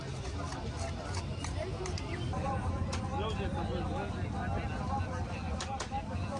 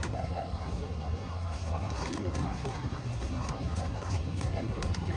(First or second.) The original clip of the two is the first